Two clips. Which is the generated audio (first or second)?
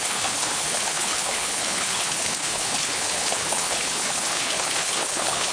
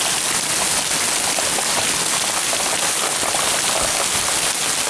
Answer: first